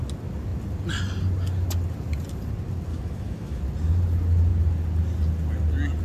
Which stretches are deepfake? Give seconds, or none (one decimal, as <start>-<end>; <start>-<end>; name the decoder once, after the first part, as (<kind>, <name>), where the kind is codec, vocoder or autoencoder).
2.9-3.6 (autoencoder, DAC-VAE)